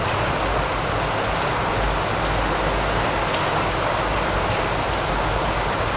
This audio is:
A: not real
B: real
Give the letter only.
B